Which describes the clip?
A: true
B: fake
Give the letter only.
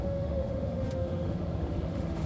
B